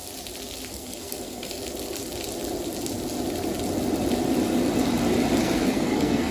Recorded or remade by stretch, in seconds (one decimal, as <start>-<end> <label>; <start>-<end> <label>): 0.0-0.7 recorded; 0.7-1.6 remade; 1.6-5.4 recorded; 5.4-6.3 remade